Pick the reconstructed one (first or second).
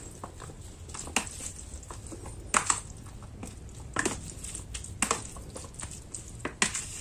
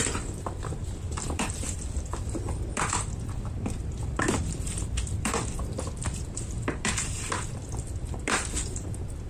second